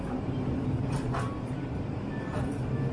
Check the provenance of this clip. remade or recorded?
recorded